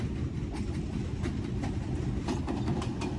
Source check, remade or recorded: recorded